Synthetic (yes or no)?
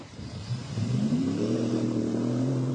yes